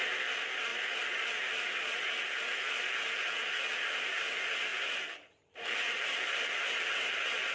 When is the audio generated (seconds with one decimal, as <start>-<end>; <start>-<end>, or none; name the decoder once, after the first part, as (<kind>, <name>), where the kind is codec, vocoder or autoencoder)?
0.7-2.1 (vocoder, BigVGAN v2); 4.7-5.4